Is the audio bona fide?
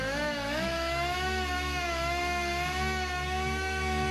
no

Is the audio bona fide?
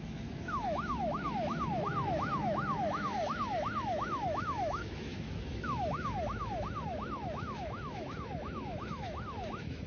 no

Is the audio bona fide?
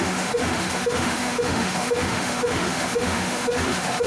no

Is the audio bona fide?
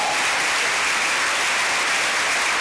yes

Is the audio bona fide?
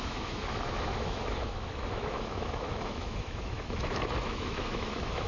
no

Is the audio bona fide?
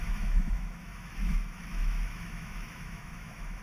no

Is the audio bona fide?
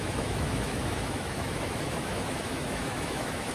no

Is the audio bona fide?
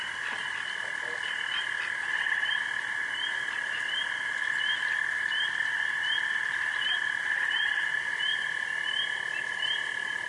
yes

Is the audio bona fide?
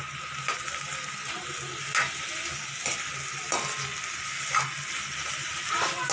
yes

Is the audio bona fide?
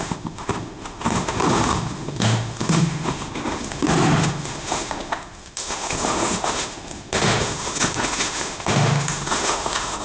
no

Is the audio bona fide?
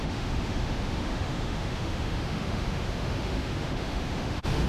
no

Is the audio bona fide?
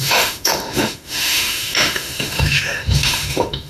no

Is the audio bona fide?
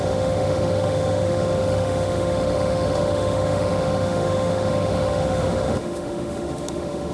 no